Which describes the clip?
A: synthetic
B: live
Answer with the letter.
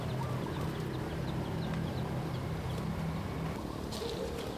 B